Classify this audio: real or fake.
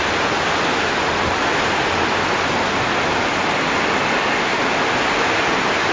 real